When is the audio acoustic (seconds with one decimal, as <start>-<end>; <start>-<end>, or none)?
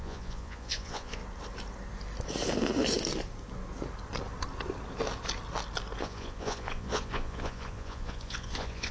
1.2-6.0